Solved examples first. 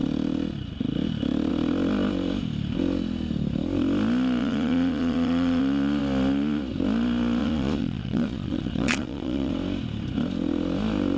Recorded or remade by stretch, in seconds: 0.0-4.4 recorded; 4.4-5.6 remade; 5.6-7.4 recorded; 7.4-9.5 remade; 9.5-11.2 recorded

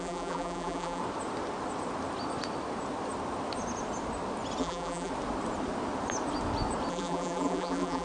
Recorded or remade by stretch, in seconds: 0.0-1.0 remade; 1.0-4.6 recorded; 4.6-5.1 remade; 5.1-6.9 recorded; 6.9-8.0 remade

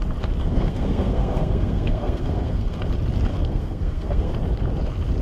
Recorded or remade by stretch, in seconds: 0.0-0.4 recorded; 0.4-2.8 remade; 2.8-3.3 recorded; 3.3-4.3 remade; 4.3-5.2 recorded

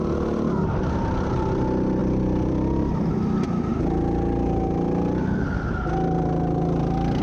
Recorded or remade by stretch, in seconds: 0.0-2.0 recorded; 2.0-3.1 remade; 3.1-7.2 recorded

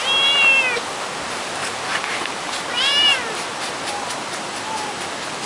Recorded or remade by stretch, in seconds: 0.0-1.9 recorded; 1.9-3.9 remade; 3.9-5.5 recorded

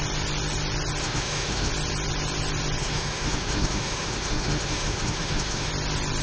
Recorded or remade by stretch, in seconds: 0.0-1.0 recorded; 1.0-1.7 remade; 1.7-2.8 recorded; 2.8-5.7 remade; 5.7-6.2 recorded

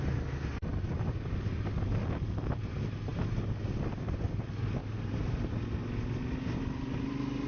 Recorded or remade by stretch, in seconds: 0.0-4.8 recorded; 4.8-5.5 remade; 5.5-7.5 recorded

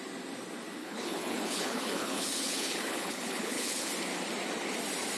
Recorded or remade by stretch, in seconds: 0.0-0.8 recorded; 0.8-3.9 remade; 3.9-5.2 recorded